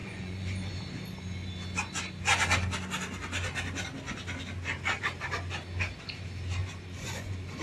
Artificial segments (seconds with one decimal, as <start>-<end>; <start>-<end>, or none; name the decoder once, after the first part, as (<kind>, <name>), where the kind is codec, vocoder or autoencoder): 0.0-0.8 (vocoder, Vocos); 6.6-7.6